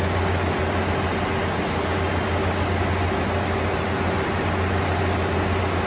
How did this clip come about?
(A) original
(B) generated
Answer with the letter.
A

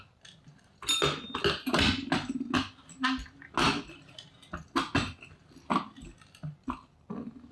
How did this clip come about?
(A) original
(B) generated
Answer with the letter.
A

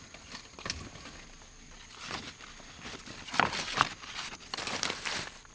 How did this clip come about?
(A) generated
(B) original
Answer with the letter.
B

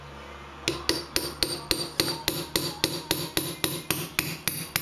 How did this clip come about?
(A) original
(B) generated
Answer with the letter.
A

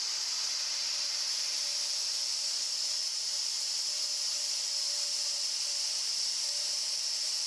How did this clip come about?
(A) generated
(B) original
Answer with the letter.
B